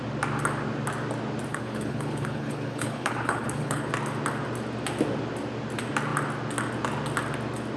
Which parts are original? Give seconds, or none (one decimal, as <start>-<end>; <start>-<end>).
0.0-1.5; 3.9-7.8